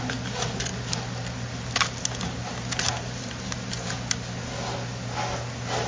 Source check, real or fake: real